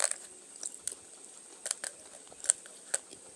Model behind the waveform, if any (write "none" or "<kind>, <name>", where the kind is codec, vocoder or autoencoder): none